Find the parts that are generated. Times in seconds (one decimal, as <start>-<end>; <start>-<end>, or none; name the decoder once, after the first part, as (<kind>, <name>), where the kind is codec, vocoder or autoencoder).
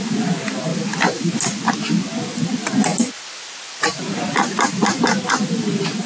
0.7-1.7 (vocoder, BigVGAN v2); 2.9-4.9